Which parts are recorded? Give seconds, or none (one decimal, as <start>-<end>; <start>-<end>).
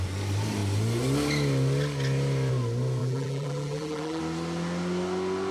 0.0-3.0; 4.2-5.5